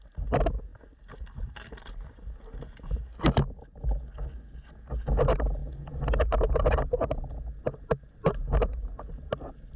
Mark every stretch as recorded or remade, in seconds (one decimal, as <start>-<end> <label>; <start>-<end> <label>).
0.0-9.8 recorded